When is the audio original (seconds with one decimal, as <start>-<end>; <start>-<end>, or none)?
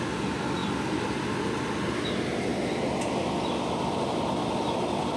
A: 0.0-5.2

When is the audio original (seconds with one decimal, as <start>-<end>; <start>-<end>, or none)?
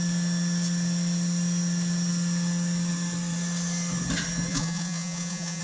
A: 0.0-4.5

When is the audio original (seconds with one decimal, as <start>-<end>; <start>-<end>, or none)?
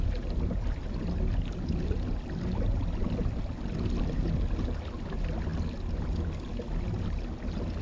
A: 0.0-7.8